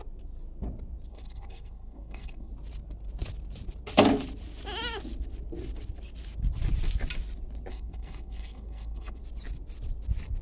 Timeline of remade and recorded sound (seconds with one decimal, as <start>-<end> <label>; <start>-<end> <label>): 0.0-1.1 recorded; 1.1-2.5 remade; 2.5-7.7 recorded; 7.7-9.2 remade; 9.2-10.4 recorded